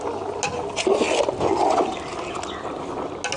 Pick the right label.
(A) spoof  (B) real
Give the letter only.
B